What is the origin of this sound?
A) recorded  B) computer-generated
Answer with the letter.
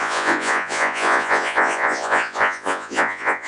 B